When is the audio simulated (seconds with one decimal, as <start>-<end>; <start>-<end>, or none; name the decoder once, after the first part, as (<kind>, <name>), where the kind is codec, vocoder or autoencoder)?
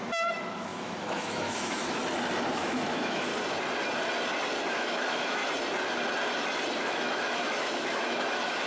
0.0-2.0 (autoencoder, DAC-VAE); 2.5-3.3; 4.7-5.4; 6.8-8.7